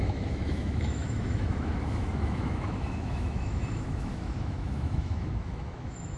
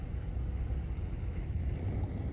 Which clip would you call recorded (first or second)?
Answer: second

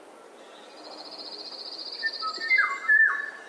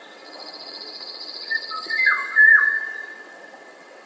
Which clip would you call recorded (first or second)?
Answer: first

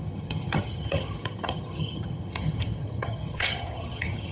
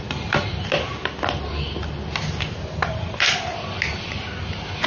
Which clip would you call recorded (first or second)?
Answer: second